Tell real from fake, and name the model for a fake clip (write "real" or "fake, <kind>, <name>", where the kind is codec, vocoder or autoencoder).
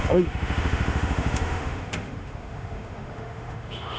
fake, autoencoder, DAC-VAE